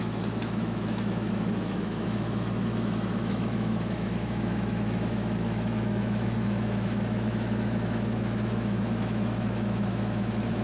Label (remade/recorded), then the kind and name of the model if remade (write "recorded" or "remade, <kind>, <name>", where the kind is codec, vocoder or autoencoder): remade, autoencoder, DAC-VAE